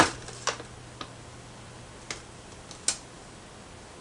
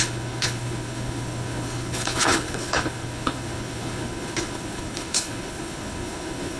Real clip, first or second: first